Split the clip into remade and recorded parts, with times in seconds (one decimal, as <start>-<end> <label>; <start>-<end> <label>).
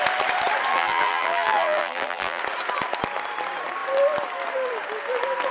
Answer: 0.0-0.7 recorded; 0.7-2.4 remade; 2.4-5.5 recorded